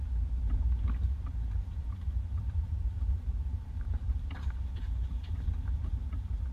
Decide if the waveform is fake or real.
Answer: fake